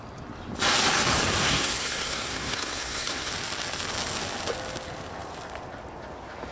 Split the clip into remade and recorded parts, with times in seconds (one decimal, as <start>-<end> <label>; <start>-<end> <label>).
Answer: 0.0-1.4 recorded; 1.4-3.3 remade; 3.3-6.5 recorded